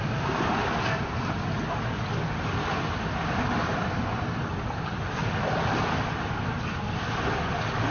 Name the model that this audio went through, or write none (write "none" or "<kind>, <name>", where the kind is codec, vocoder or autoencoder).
none